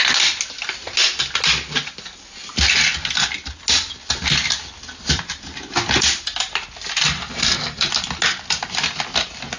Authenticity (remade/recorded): recorded